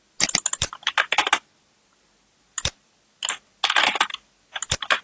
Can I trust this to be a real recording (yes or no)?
yes